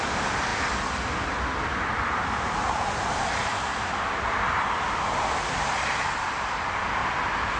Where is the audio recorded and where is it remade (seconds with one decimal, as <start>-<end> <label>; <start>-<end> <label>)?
0.0-7.6 recorded